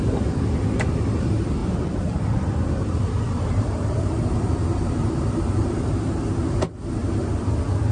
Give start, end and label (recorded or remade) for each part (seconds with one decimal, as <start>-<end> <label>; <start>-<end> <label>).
0.0-1.6 recorded; 1.6-6.3 remade; 6.3-7.0 recorded; 7.0-7.5 remade; 7.5-7.9 recorded